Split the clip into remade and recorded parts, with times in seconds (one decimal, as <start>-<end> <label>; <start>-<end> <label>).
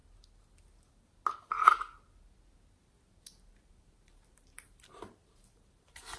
0.0-3.7 recorded; 3.7-6.2 remade